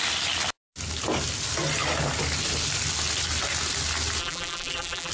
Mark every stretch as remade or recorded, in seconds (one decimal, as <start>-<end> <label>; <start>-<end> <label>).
0.0-4.2 recorded; 4.2-5.1 remade